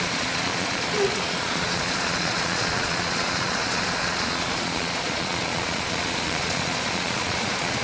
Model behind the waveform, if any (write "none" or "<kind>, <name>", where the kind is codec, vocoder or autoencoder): vocoder, Vocos